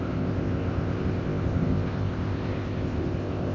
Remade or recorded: remade